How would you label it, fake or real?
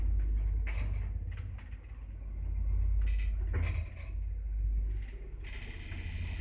real